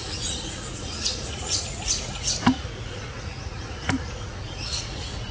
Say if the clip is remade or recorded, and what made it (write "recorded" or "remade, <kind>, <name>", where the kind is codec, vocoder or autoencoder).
remade, vocoder, Vocos